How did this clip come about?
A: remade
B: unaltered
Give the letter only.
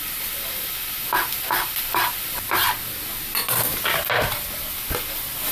B